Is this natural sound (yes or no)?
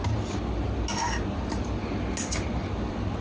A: yes